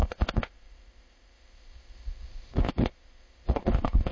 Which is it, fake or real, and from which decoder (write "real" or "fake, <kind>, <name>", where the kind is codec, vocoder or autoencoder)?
fake, codec, ZipCodec